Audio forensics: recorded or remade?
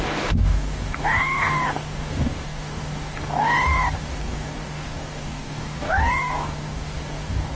remade